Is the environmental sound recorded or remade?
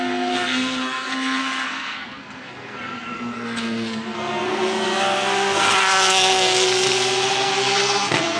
remade